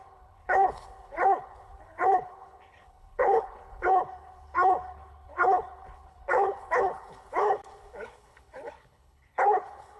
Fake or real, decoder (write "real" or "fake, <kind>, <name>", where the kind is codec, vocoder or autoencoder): fake, codec, HILCodec